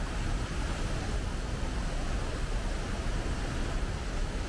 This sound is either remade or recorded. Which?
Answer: recorded